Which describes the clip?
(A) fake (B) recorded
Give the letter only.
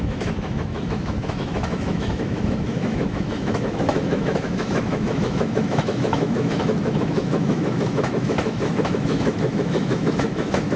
A